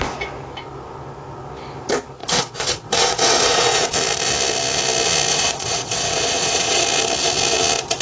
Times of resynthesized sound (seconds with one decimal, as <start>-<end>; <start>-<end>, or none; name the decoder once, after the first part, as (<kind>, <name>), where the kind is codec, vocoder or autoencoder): 2.2-3.9 (vocoder, WaveNeXt); 5.3-6.8